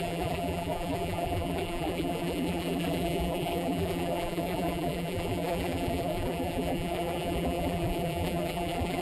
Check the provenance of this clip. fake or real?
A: fake